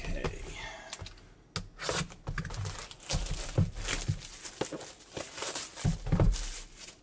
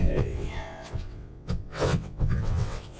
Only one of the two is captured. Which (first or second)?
first